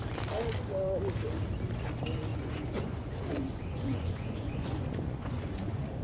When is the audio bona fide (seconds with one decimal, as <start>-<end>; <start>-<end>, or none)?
0.0-2.3